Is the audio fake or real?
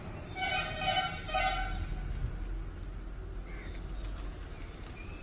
real